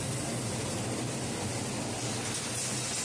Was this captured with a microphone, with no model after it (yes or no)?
yes